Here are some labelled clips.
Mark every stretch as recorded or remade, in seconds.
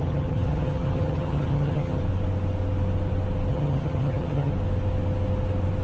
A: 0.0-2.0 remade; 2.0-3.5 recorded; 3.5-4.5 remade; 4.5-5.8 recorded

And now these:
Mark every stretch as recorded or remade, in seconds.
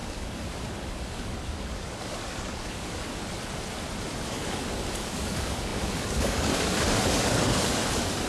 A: 0.0-3.2 remade; 3.2-4.3 recorded; 4.3-8.3 remade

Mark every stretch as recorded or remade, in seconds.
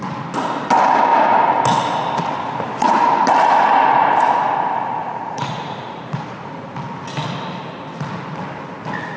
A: 0.0-5.0 recorded; 5.0-6.5 remade; 6.5-9.2 recorded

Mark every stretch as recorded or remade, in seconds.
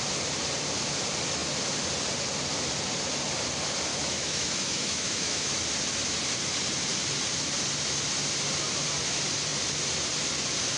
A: 0.0-3.9 recorded; 3.9-5.6 remade; 5.6-10.8 recorded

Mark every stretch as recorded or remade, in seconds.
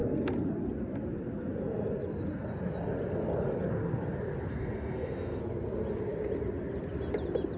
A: 0.0-4.5 recorded; 4.5-5.4 remade; 5.4-7.6 recorded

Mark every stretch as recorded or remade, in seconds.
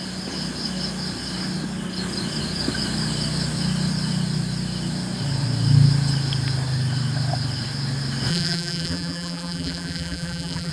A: 0.0-8.3 recorded; 8.3-10.7 remade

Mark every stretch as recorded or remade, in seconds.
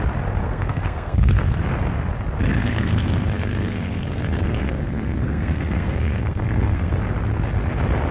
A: 0.0-0.4 recorded; 0.4-1.6 remade; 1.6-2.6 recorded; 2.6-7.0 remade; 7.0-8.1 recorded